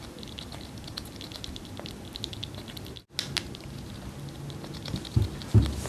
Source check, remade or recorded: recorded